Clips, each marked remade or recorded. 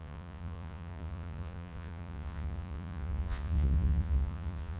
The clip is remade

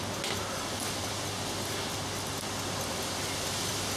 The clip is recorded